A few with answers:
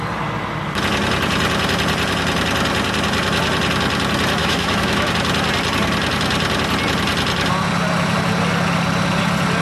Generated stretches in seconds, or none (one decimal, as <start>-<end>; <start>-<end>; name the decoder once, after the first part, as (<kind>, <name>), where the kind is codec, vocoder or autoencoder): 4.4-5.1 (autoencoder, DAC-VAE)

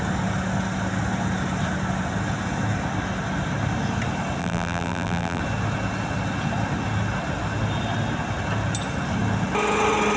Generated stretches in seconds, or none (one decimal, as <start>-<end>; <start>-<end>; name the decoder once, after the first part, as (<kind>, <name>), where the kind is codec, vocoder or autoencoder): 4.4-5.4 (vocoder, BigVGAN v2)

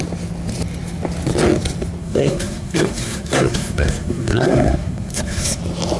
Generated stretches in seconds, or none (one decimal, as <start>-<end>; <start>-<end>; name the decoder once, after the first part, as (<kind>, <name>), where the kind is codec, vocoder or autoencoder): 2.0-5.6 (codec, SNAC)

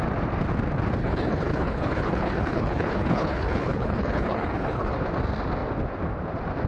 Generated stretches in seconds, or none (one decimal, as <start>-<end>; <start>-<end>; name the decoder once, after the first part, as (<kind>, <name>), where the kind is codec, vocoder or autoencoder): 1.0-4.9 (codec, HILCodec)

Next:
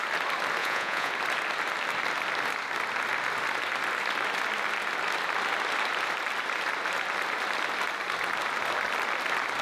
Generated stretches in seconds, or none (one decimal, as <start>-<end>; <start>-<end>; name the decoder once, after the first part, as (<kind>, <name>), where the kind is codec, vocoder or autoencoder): 0.6-1.1 (vocoder, Vocos)

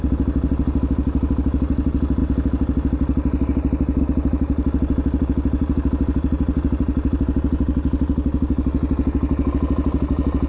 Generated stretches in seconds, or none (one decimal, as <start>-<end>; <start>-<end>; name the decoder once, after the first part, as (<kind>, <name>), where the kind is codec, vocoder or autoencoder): none

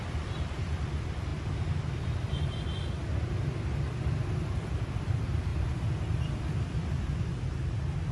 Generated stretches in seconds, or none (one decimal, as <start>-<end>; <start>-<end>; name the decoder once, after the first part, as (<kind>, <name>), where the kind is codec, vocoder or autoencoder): 0.0-5.5 (vocoder, BigVGAN v2); 6.7-8.1

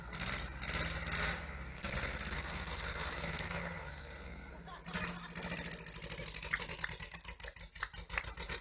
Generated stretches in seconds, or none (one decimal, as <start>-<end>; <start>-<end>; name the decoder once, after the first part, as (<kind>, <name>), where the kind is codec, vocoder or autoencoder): 1.7-4.5 (codec, SNAC)